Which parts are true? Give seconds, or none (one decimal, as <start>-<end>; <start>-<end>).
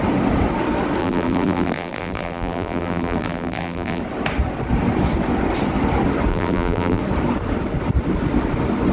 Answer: 0.0-1.0; 4.0-6.3; 7.0-8.9